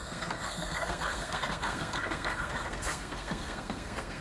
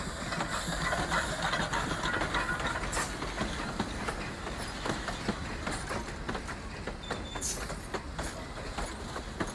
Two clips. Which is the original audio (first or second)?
second